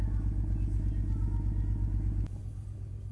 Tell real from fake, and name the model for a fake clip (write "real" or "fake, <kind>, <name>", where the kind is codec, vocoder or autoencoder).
real